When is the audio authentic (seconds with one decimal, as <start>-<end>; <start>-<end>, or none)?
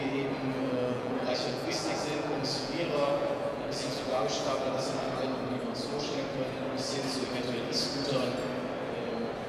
0.0-0.5; 4.7-9.5